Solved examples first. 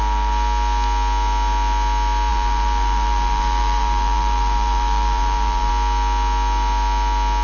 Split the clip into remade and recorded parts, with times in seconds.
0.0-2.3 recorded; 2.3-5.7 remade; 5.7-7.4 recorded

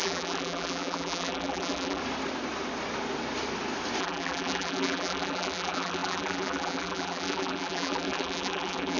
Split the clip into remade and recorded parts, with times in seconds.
0.0-2.0 remade; 2.0-4.0 recorded; 4.0-9.0 remade

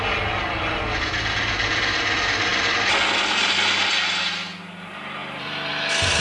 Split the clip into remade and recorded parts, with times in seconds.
0.0-5.2 recorded; 5.2-5.7 remade; 5.7-6.2 recorded

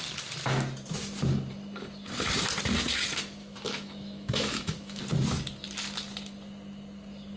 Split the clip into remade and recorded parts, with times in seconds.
0.0-3.4 recorded; 3.4-5.0 remade; 5.0-7.4 recorded

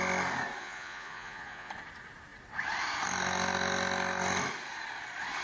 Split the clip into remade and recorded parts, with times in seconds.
0.0-0.6 recorded; 0.6-1.7 remade; 1.7-5.4 recorded

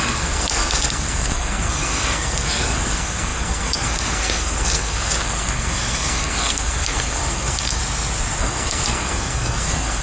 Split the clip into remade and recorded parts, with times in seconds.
0.0-7.8 remade; 7.8-8.4 recorded; 8.4-10.0 remade